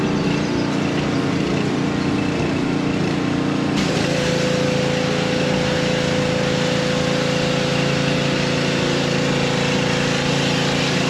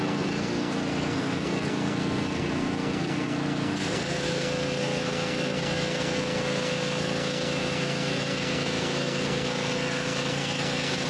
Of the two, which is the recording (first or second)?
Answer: first